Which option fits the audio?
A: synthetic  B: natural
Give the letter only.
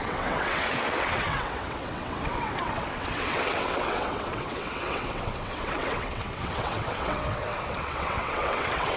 A